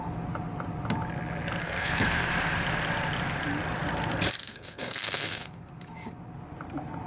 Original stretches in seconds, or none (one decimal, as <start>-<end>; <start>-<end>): 0.0-1.6; 2.3-4.4; 5.7-7.1